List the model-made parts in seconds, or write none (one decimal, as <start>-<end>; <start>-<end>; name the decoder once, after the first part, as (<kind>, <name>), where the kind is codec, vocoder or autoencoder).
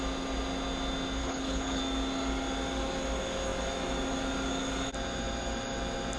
1.2-1.8 (codec, HILCodec)